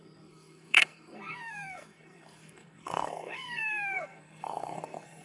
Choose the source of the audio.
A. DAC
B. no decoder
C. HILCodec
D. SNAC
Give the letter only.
D